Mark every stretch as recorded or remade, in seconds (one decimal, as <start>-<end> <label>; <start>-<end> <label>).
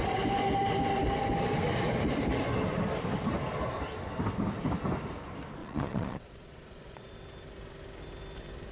0.0-5.6 recorded; 5.6-7.1 remade; 7.1-8.7 recorded